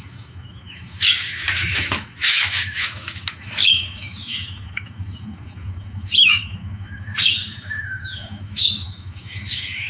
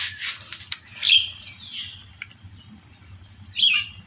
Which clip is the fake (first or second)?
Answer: first